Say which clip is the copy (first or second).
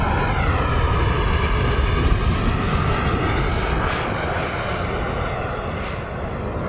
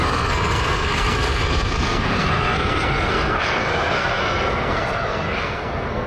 second